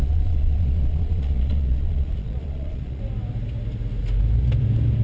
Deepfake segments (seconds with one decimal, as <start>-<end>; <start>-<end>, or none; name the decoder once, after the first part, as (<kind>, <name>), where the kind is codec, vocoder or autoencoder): 0.0-3.0 (vocoder, Vocos)